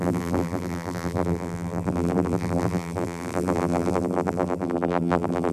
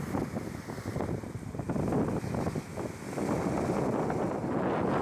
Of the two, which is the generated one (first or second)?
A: first